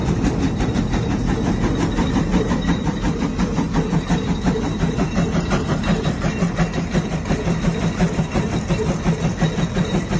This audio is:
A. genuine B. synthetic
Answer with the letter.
A